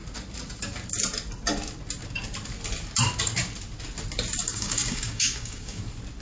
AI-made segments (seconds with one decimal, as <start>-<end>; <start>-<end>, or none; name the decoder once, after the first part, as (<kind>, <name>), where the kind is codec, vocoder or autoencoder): 4.4-5.8 (codec, DAC)